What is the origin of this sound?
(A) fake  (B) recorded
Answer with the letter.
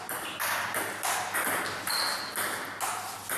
B